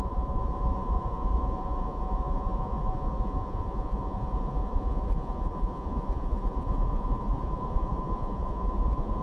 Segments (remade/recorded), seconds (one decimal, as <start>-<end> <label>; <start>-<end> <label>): 0.0-9.2 remade